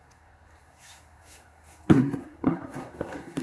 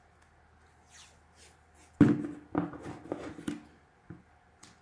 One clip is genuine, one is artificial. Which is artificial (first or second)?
first